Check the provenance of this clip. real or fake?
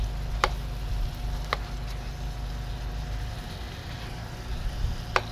real